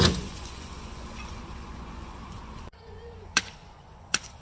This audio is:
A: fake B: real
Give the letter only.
A